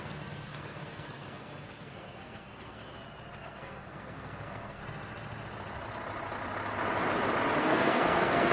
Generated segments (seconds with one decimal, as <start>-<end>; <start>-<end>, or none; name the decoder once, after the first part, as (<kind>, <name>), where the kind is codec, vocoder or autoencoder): 0.0-2.9 (codec, SNAC); 3.4-4.8; 7.6-8.5